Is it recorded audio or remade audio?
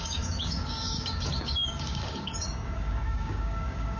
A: remade